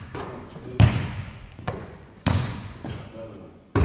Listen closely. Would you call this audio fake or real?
fake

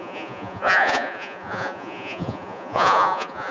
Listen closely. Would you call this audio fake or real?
fake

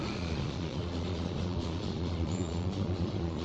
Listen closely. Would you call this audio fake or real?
fake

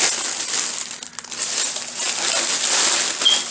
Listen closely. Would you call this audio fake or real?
real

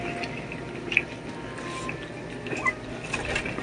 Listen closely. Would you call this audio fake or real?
real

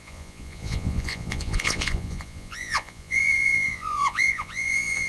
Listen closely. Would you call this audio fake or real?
fake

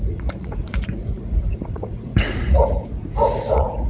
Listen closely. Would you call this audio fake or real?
fake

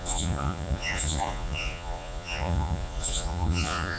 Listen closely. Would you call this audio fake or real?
fake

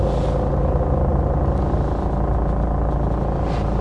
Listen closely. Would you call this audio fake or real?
real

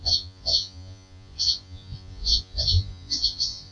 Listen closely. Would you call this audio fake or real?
fake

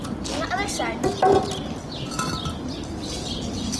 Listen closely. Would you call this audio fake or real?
real